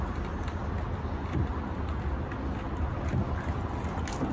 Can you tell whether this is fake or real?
real